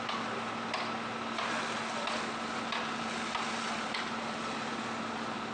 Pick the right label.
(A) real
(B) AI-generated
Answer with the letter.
A